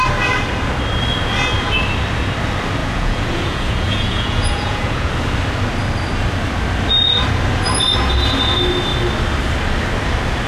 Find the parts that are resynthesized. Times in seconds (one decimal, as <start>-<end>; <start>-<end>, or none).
2.8-5.1